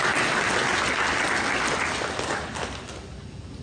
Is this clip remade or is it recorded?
recorded